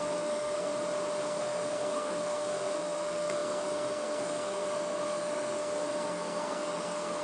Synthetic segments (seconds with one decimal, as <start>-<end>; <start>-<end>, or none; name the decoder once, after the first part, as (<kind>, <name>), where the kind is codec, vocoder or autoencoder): 0.0-0.7 (codec, SNAC); 1.2-7.2

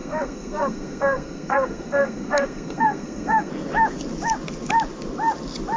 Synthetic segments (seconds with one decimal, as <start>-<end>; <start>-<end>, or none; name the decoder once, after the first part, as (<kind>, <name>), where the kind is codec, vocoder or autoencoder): 0.0-3.5 (codec, SNAC)

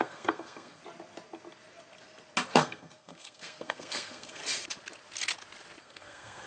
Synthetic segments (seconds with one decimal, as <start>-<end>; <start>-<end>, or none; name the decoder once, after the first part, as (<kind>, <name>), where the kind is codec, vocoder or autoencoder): 0.0-0.8 (codec, SNAC); 2.5-4.4; 5.8-6.5

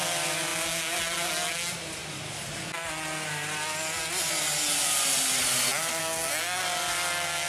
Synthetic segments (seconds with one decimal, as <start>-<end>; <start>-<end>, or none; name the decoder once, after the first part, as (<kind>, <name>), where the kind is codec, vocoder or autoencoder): 6.0-6.6 (codec, SNAC)